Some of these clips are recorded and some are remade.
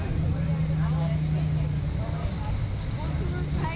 recorded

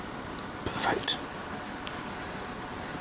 recorded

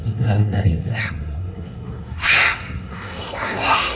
remade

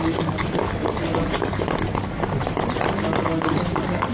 recorded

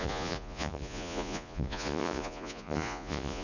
remade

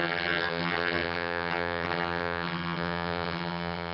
remade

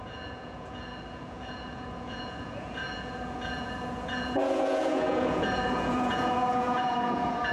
remade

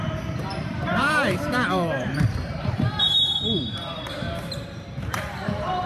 remade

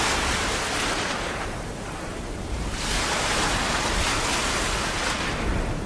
recorded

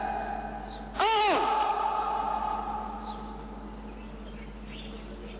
recorded